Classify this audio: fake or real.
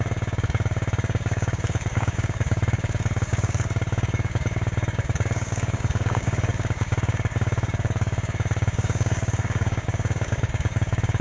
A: fake